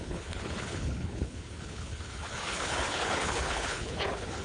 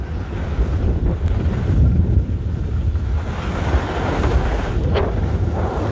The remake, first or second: first